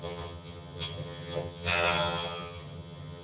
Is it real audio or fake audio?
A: fake